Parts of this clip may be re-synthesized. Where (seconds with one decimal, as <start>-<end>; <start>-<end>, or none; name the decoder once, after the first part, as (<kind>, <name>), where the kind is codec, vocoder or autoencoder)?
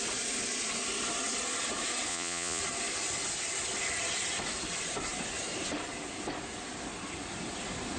2.1-2.6 (vocoder, Vocos)